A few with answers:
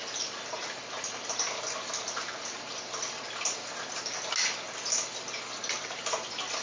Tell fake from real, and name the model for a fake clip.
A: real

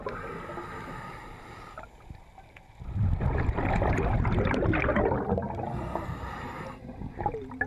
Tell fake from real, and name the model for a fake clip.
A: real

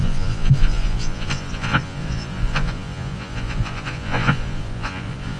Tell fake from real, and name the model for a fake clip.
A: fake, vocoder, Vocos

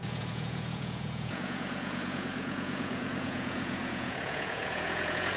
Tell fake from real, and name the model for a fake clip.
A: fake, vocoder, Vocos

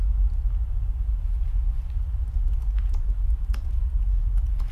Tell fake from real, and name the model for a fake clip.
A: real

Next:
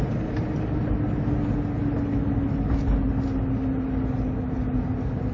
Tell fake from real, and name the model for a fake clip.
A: real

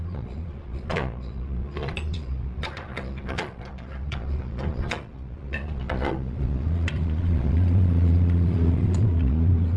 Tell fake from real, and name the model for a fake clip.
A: fake, vocoder, Vocos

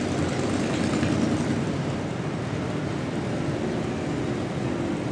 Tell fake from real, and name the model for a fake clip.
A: real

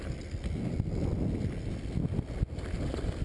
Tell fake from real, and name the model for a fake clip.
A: real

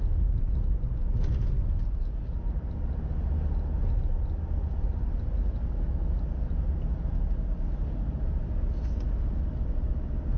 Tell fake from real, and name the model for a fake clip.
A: real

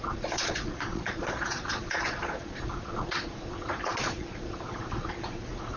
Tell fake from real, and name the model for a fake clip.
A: fake, vocoder, Vocos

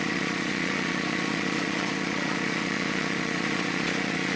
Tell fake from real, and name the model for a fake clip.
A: fake, vocoder, Vocos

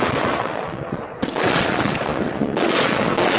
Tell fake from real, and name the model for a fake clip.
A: fake, vocoder, Vocos